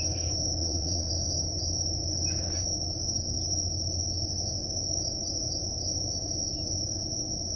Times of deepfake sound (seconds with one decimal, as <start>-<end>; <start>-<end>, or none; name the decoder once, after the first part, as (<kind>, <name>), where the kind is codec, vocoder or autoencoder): 0.6-1.1 (vocoder, WaveNeXt)

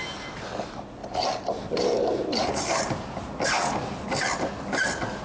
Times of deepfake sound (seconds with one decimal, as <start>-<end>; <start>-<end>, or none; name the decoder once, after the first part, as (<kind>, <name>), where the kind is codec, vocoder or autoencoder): 1.0-4.1 (vocoder, BigVGAN v2)

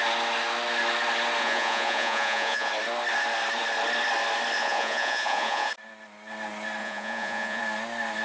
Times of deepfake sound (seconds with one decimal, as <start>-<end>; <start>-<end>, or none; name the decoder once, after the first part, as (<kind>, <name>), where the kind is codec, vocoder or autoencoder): 1.4-2.7 (vocoder, Vocos); 4.6-5.7; 6.8-7.6

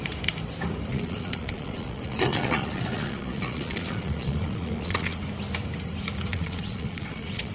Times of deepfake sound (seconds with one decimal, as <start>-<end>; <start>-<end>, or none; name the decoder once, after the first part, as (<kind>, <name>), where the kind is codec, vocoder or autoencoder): 0.9-5.2 (vocoder, Vocos); 6.3-7.5

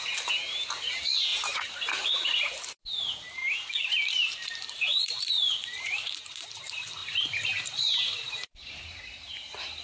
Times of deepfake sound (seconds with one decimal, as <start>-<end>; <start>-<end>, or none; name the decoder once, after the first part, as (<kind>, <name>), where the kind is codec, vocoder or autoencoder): 3.4-6.6 (vocoder, BigVGAN v2); 7.0-8.8

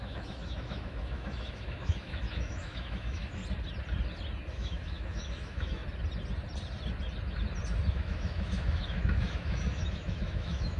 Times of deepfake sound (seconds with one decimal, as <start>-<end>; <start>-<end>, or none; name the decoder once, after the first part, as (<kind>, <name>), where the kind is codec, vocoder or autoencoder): 0.0-3.4 (autoencoder, DAC-VAE); 4.5-5.8; 7.9-10.8

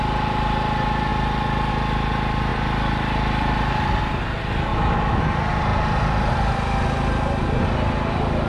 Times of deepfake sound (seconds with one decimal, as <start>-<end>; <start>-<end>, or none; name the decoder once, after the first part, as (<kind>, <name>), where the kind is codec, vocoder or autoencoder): 4.7-5.2 (autoencoder, DAC-VAE)